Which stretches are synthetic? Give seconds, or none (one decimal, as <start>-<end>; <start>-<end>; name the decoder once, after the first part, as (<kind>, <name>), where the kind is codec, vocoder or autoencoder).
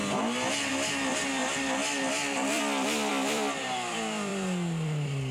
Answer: 0.5-4.3 (vocoder, BigVGAN v2)